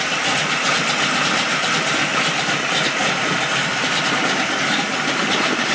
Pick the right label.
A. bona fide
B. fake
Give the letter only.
A